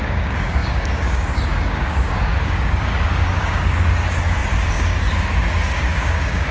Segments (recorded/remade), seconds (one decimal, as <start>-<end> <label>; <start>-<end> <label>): 0.0-6.5 remade